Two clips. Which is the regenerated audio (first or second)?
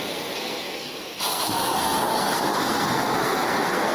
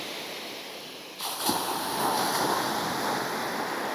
first